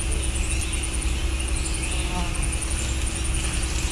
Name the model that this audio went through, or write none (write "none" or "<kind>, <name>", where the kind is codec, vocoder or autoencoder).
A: none